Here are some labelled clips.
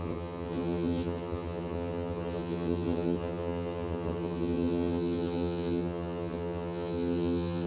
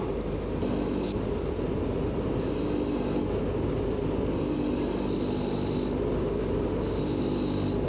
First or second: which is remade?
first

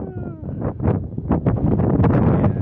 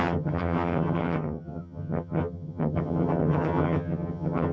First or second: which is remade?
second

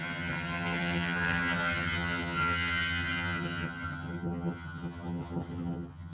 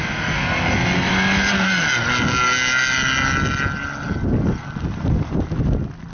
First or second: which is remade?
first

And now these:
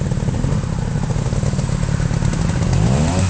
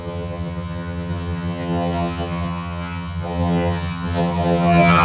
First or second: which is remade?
second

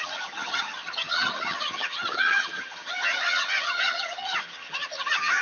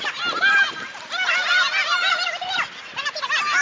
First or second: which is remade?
first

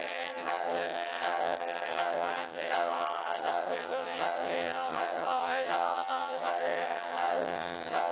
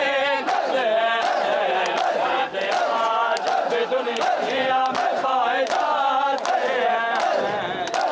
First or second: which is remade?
first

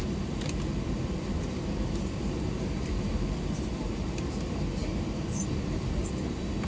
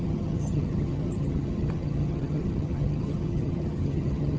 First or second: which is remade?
second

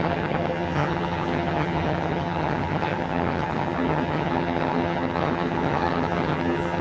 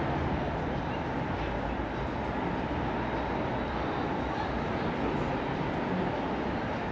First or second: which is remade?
first